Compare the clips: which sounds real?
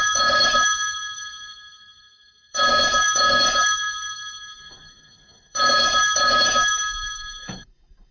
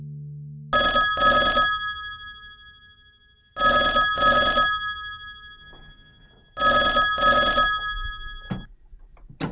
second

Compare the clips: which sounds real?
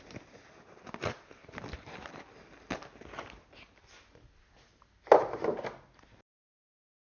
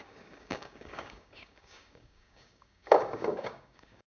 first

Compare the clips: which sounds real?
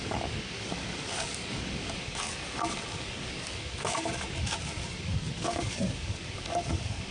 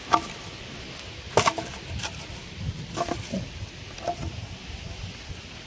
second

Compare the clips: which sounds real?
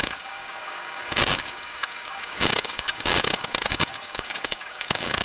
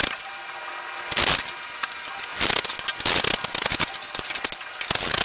second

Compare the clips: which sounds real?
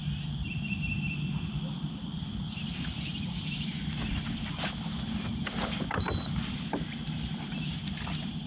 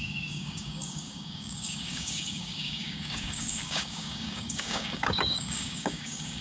first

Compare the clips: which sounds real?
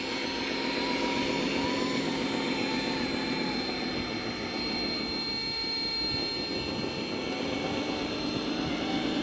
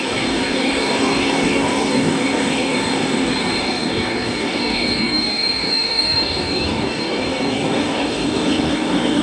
first